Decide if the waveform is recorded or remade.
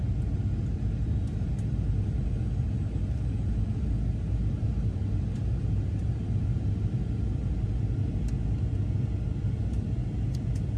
recorded